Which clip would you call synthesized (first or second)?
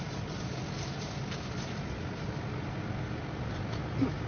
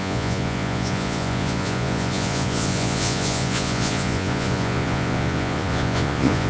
second